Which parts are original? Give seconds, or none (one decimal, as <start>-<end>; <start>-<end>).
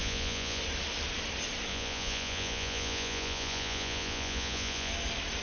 0.6-1.7; 4.9-5.4